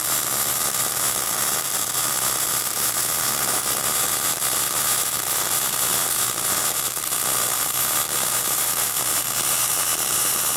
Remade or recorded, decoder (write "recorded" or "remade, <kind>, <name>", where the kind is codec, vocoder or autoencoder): remade, vocoder, BigVGAN v2